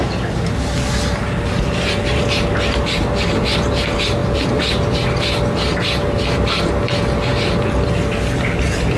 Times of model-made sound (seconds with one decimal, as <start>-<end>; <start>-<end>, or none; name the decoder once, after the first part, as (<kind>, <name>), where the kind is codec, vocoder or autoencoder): 4.2-5.8 (vocoder, BigVGAN v2)